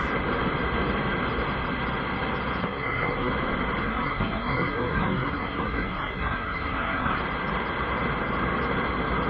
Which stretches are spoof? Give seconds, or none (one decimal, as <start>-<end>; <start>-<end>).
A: 2.6-3.3; 3.8-7.2